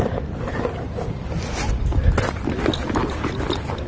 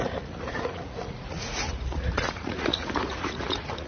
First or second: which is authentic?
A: first